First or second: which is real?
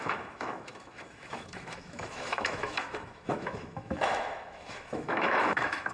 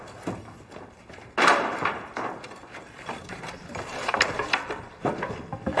second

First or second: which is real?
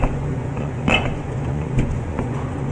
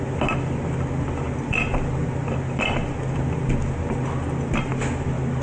second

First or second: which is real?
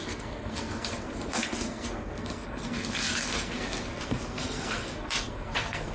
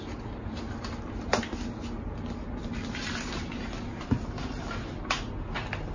second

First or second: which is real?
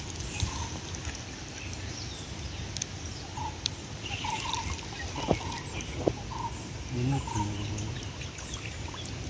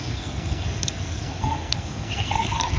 first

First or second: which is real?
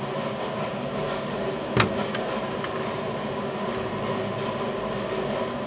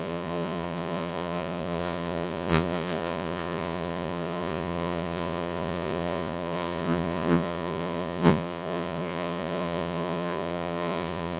first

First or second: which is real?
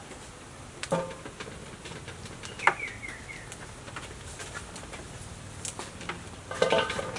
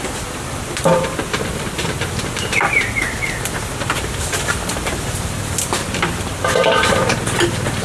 first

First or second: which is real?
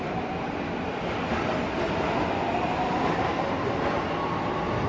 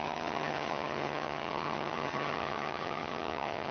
first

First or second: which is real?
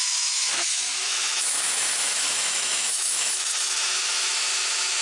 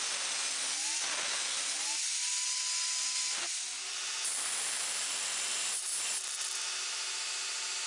second